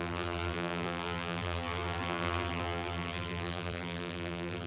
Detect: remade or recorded remade